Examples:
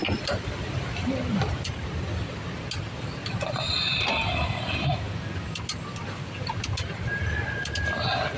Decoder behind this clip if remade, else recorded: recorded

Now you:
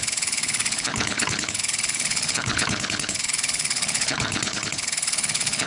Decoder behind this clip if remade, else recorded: remade, codec, HILCodec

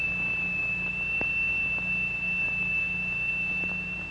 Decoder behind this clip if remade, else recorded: recorded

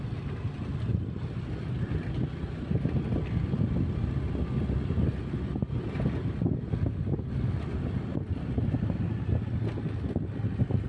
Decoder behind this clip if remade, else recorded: recorded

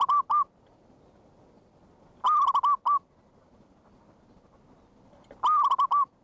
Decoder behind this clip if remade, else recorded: recorded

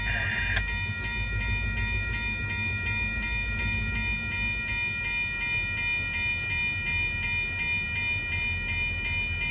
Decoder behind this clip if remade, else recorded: recorded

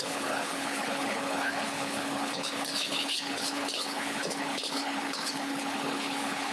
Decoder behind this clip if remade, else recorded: remade, codec, HILCodec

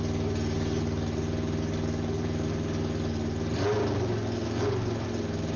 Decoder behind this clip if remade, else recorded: recorded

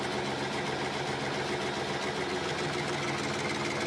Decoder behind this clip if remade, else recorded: recorded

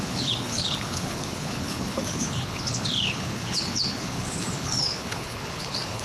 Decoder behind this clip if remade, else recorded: remade, codec, HILCodec